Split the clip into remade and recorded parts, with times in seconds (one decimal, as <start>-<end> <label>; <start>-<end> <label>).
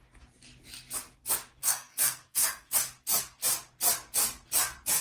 0.0-1.6 recorded; 1.6-2.8 remade; 2.8-5.0 recorded